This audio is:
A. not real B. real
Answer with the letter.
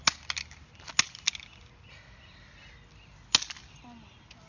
B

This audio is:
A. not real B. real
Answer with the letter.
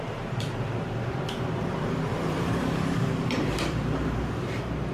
A